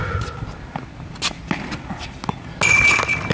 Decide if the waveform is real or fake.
real